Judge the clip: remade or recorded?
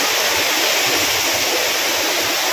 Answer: recorded